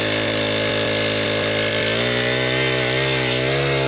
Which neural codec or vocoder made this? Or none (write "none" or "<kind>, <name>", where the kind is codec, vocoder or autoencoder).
none